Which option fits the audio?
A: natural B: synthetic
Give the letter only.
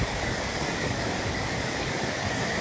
B